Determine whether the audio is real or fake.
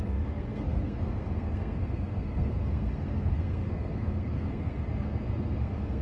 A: fake